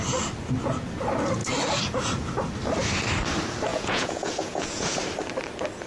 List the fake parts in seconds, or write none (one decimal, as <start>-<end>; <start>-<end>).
3.7-5.0